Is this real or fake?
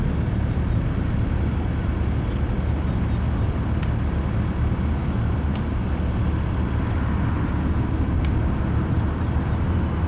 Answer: real